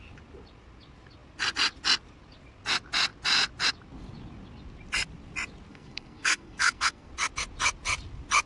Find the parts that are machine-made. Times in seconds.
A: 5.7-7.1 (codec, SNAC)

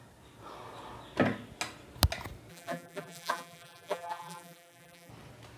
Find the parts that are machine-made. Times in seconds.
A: 2.5-5.1 (vocoder, BigVGAN v2)

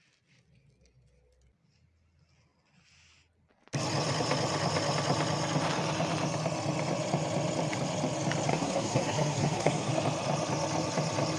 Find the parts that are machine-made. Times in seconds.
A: 8.5-9.9 (codec, SNAC)